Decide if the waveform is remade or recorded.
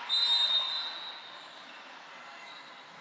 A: recorded